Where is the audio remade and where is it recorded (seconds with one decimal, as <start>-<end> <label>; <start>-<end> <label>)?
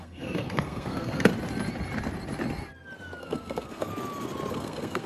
0.0-1.3 remade; 1.3-3.2 recorded; 3.2-3.9 remade; 3.9-4.5 recorded; 4.5-5.1 remade